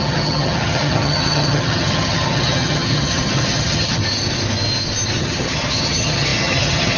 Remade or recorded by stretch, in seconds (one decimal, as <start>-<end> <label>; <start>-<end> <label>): 0.0-4.0 remade; 4.0-5.2 recorded; 5.2-7.0 remade